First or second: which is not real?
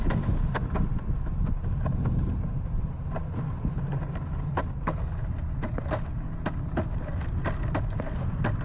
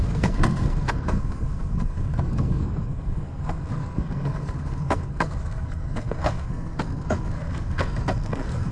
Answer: second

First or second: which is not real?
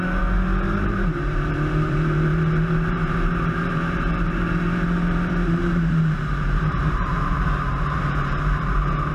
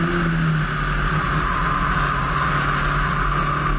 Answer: first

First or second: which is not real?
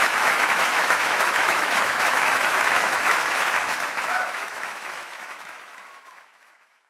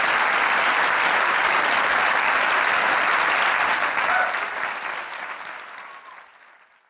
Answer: first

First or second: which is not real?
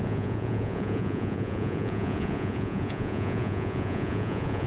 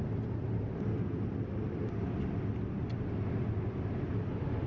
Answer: first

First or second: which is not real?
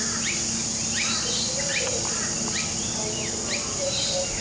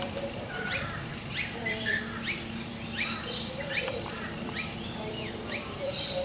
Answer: second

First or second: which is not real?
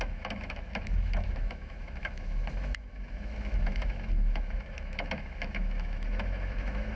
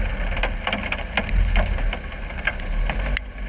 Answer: first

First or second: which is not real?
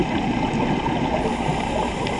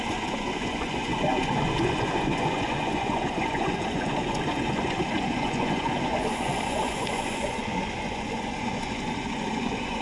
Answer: second